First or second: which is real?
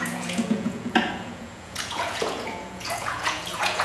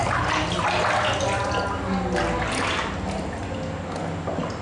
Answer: second